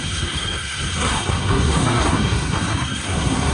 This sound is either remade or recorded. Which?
remade